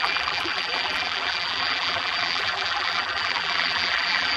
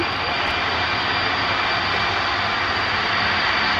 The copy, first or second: first